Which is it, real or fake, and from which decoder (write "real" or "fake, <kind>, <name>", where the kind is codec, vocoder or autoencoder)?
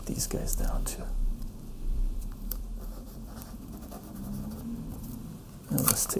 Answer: fake, vocoder, BigVGAN v2